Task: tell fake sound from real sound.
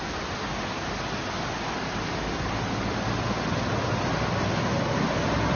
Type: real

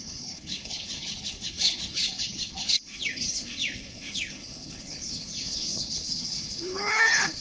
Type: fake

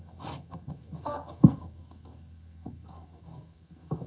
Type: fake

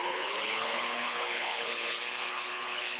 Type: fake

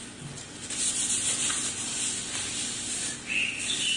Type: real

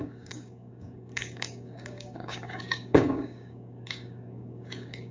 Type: fake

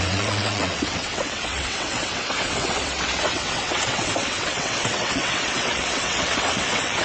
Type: fake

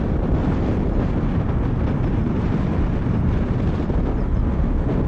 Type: real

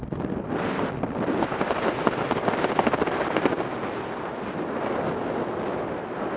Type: real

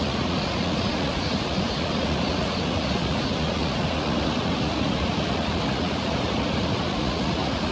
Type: fake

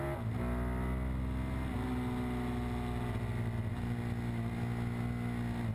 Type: real